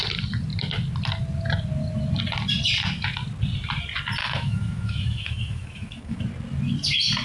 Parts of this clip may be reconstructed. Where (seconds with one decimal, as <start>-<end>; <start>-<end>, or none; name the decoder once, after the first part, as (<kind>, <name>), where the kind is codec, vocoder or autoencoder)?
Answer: 4.2-6.2 (autoencoder, DAC-VAE)